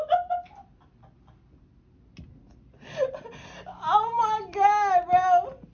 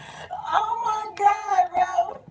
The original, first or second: first